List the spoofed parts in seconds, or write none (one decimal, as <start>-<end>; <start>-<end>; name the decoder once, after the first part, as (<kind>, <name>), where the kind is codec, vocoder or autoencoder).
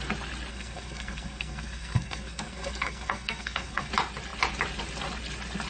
0.5-3.9 (codec, SNAC)